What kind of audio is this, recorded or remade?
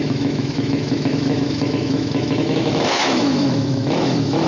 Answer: remade